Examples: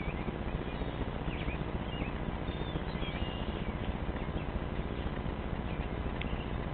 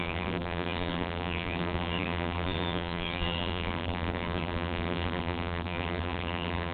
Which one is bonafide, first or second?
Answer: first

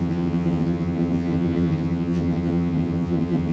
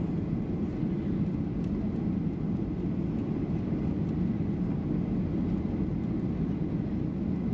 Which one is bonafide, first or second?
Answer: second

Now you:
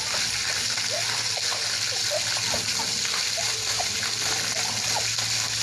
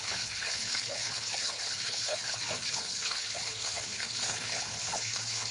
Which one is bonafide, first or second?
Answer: first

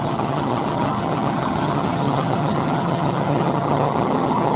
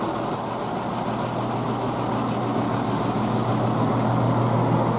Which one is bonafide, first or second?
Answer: second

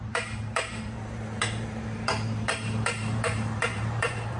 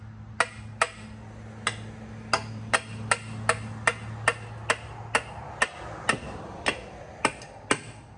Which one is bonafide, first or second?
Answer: second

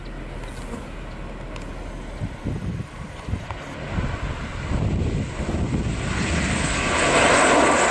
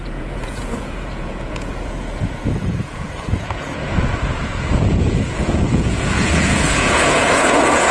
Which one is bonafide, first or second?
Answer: first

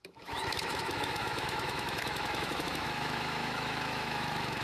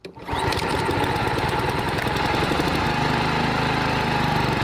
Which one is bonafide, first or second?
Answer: second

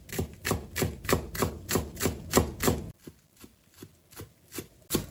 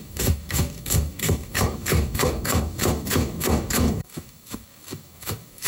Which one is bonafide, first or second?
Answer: first